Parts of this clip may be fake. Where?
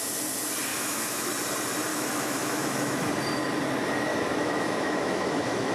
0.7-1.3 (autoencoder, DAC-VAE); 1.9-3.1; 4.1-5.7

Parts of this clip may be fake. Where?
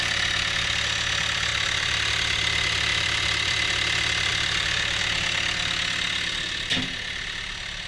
1.5-2.1 (vocoder, BigVGAN v2); 2.9-3.7; 4.3-5.0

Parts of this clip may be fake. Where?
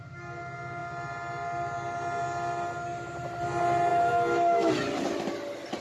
3.9-4.7 (autoencoder, DAC-VAE)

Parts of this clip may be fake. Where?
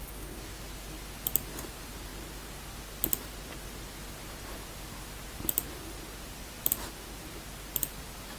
none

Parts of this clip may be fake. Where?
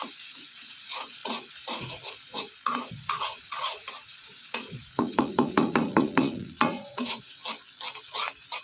0.0-7.4 (vocoder, Vocos)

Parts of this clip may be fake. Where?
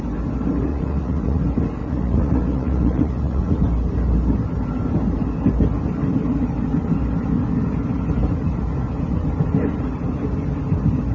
0.7-1.4 (vocoder, Vocos); 1.8-3.6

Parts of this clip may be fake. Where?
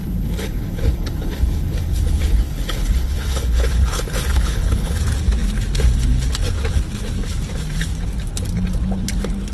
0.0-5.0 (codec, HILCodec)